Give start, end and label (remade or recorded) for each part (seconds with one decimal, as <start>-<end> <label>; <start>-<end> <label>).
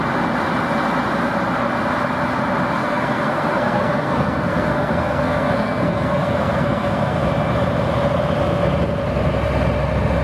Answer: 0.0-2.8 recorded; 2.8-7.3 remade; 7.3-10.2 recorded